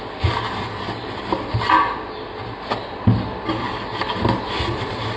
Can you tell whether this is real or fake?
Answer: real